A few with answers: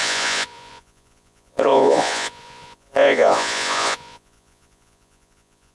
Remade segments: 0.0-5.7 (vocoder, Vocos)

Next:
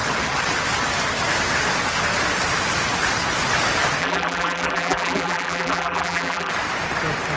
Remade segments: 4.0-6.5 (vocoder, BigVGAN v2)

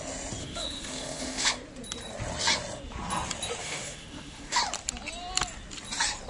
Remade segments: 0.4-1.5 (autoencoder, DAC-VAE); 3.6-4.6

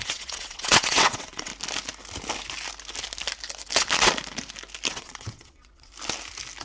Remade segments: 0.0-1.5 (vocoder, WaveNeXt); 4.9-5.9

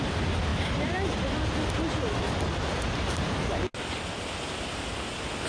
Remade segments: none

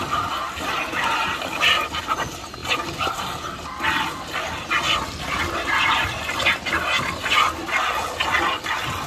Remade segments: none